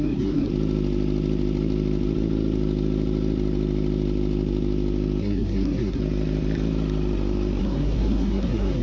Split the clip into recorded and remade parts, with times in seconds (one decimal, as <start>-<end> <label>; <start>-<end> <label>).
0.0-0.5 remade; 0.5-5.2 recorded; 5.2-6.0 remade; 6.0-7.6 recorded; 7.6-8.8 remade